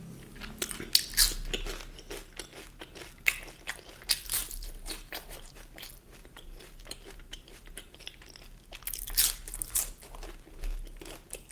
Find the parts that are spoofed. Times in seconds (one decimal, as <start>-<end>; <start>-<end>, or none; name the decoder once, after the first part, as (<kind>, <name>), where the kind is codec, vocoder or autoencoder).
4.4-8.0 (vocoder, BigVGAN v2)